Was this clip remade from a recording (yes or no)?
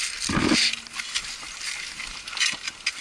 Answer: no